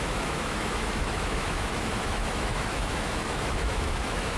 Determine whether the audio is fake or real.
fake